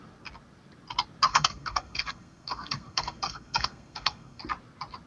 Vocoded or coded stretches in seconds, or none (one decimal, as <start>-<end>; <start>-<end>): 1.3-4.4